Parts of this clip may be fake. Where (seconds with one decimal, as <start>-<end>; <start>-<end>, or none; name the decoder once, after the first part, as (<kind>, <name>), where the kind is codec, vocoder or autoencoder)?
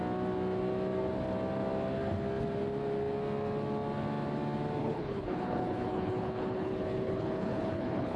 4.8-8.2 (codec, HILCodec)